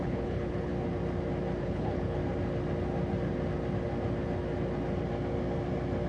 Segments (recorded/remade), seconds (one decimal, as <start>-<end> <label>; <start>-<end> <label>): 0.0-0.7 remade; 0.7-1.6 recorded; 1.6-2.2 remade; 2.2-6.1 recorded